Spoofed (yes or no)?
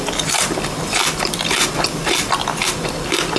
no